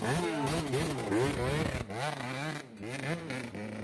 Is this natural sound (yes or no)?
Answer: yes